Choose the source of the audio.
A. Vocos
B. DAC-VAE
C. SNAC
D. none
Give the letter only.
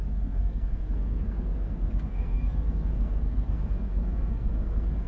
C